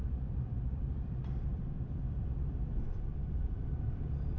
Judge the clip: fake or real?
fake